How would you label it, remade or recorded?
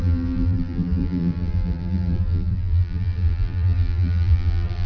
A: remade